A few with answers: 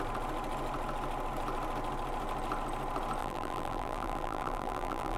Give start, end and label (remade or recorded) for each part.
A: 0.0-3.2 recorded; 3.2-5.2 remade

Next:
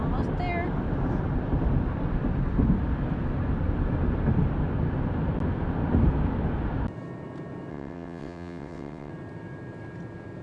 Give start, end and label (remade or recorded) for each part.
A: 0.0-7.7 recorded; 7.7-9.1 remade; 9.1-10.4 recorded